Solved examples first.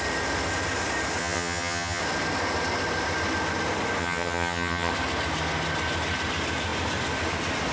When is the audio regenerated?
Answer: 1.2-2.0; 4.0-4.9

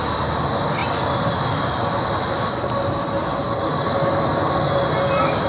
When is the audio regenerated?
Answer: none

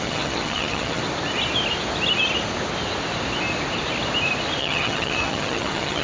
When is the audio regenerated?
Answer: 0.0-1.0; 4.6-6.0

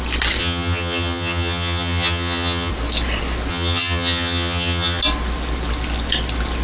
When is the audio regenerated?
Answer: 0.4-2.7; 3.5-5.0

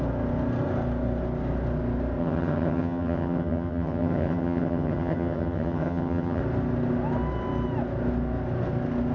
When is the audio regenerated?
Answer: 2.2-6.4